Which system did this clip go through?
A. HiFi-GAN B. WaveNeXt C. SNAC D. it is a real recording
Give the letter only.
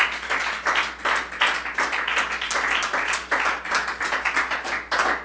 D